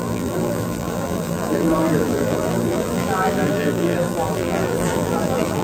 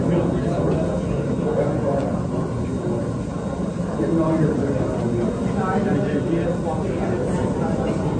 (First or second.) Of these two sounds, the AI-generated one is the first